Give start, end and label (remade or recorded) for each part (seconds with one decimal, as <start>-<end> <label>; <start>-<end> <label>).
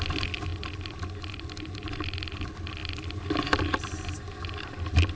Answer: 0.0-5.2 recorded